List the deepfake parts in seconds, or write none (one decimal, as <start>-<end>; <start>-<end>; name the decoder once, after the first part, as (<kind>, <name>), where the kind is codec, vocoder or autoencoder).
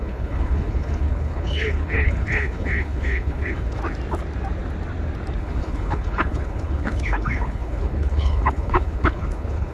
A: 0.0-3.8 (codec, HILCodec); 5.4-9.7